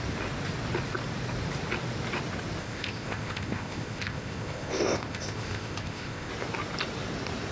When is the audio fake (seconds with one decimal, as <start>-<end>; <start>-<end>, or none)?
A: 2.6-6.3